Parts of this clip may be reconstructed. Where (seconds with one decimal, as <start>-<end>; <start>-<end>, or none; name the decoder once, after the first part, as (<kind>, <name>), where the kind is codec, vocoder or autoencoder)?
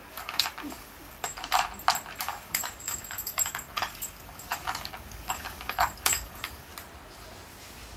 0.0-1.3 (codec, DAC); 2.2-6.7